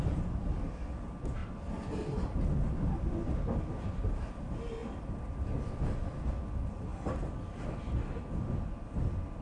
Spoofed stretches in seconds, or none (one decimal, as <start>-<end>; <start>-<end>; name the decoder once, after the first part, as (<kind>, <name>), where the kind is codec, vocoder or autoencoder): none